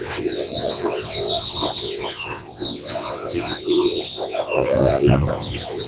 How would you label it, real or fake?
fake